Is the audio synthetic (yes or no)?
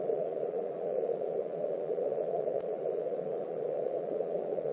yes